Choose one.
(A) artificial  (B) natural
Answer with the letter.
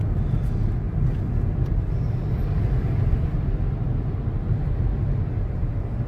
B